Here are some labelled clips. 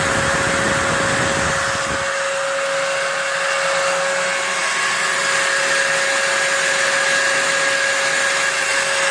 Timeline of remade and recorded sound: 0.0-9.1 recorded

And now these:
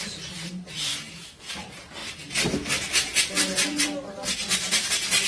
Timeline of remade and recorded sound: 0.0-0.9 recorded; 0.9-1.5 remade; 1.5-5.3 recorded

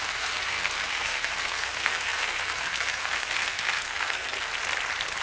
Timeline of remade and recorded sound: 0.0-4.5 remade; 4.5-5.2 recorded

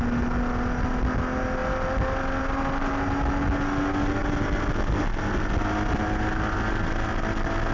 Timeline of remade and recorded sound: 0.0-7.7 recorded

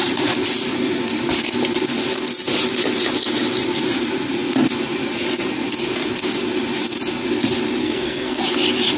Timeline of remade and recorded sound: 0.0-7.8 recorded; 7.8-8.4 remade; 8.4-9.0 recorded

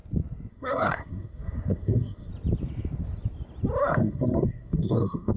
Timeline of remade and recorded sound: 0.0-0.5 recorded; 0.5-2.3 remade; 2.3-3.8 recorded; 3.8-5.4 remade

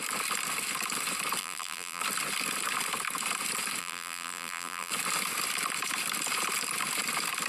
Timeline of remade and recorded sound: 0.0-1.4 recorded; 1.4-2.0 remade; 2.0-3.8 recorded; 3.8-4.9 remade; 4.9-7.5 recorded

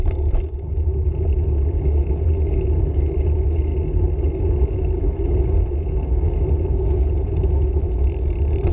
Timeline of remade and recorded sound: 0.0-8.7 recorded